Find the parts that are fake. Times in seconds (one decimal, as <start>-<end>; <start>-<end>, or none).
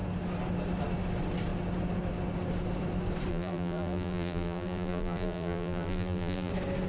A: 3.3-6.5